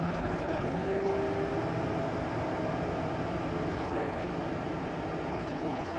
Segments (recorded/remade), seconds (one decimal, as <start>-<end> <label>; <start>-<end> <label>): 0.0-1.1 remade; 1.1-3.7 recorded; 3.7-4.3 remade; 4.3-5.3 recorded; 5.3-6.0 remade